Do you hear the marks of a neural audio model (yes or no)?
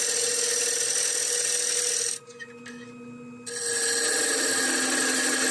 no